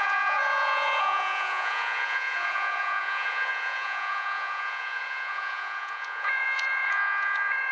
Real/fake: fake